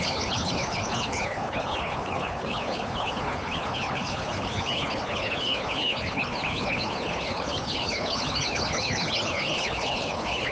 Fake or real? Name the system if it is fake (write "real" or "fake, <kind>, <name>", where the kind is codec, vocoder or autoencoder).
fake, codec, HILCodec